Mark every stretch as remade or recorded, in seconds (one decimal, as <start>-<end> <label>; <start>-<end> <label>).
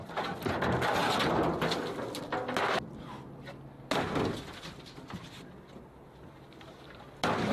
0.0-7.5 recorded